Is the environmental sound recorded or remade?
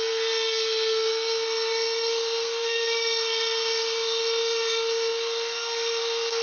remade